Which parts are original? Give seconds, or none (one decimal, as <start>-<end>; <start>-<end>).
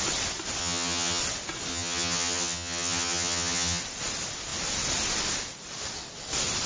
0.0-0.6; 1.2-1.7; 3.8-6.7